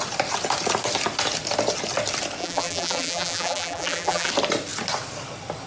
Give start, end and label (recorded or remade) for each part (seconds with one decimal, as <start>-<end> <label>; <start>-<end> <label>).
0.0-2.4 recorded; 2.4-4.3 remade; 4.3-5.7 recorded